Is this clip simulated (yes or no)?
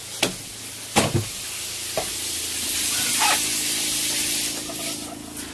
no